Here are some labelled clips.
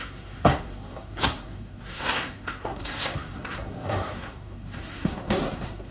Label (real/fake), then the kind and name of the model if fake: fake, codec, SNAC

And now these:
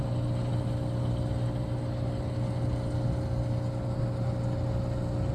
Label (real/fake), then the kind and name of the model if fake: fake, vocoder, BigVGAN v2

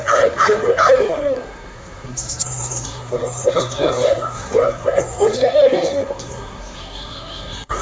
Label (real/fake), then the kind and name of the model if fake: fake, codec, SNAC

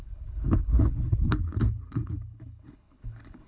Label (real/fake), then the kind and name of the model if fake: fake, codec, HILCodec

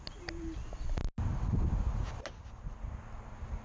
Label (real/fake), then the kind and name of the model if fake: real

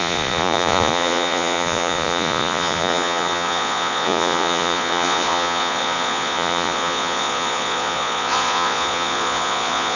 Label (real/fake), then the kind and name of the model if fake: fake, vocoder, Vocos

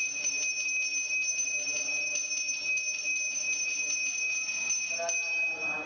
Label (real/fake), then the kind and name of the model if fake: real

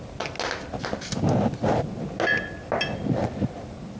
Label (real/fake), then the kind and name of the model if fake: real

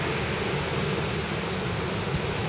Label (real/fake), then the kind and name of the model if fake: real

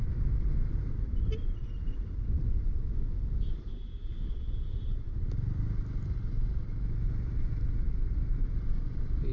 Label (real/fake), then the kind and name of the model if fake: fake, vocoder, BigVGAN v2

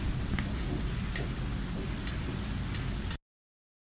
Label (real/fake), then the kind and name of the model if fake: real